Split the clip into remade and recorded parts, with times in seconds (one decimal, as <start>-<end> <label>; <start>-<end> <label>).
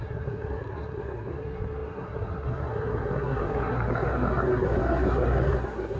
0.0-6.0 remade